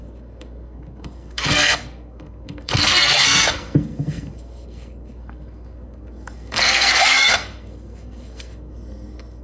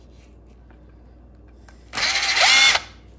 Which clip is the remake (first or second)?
first